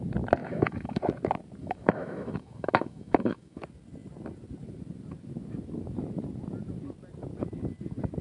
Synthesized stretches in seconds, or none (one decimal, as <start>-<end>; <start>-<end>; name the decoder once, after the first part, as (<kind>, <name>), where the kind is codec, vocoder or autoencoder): 0.4-1.0 (autoencoder, DAC-VAE); 1.6-3.6